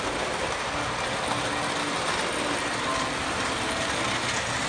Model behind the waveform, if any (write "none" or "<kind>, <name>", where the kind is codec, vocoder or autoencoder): none